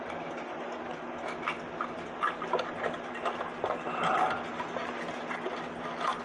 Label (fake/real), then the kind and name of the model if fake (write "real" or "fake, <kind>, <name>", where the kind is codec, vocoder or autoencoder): real